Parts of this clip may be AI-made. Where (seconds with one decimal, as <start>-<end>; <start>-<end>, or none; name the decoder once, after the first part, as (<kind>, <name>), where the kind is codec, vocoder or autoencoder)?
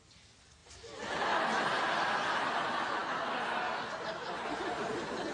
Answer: none